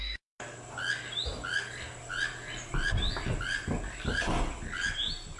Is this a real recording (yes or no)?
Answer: yes